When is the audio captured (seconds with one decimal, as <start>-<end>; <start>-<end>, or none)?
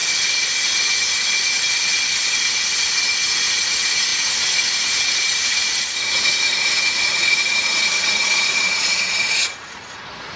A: 0.0-3.5